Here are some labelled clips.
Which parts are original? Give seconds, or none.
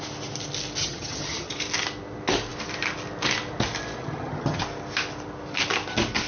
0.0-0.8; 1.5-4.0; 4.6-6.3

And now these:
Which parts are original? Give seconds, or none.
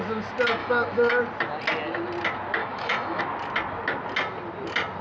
0.0-0.6; 1.2-2.6; 3.2-5.0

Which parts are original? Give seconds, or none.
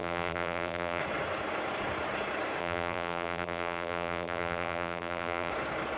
1.0-2.6; 5.5-6.0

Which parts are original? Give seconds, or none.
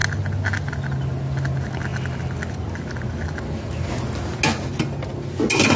0.0-5.8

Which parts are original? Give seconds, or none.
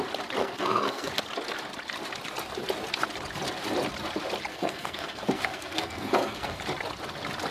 0.0-0.4; 1.1-4.5; 6.6-7.5